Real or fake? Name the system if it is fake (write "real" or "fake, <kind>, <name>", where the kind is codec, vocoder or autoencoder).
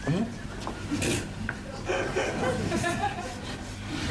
real